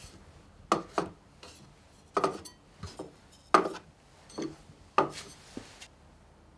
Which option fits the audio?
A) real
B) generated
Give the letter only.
A